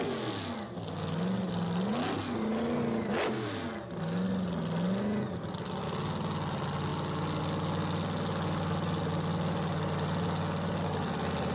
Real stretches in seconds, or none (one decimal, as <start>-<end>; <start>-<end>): 0.0-11.5